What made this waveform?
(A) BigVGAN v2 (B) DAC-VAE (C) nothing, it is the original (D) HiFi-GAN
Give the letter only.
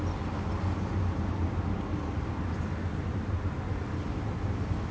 C